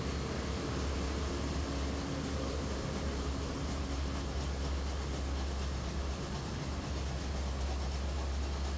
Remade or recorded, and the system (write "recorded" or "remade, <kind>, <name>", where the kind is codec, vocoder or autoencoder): recorded